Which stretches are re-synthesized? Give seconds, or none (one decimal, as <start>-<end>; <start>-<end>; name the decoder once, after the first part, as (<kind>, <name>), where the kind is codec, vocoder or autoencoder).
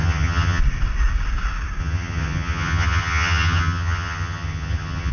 0.0-0.6 (vocoder, HiFi-GAN); 1.8-5.1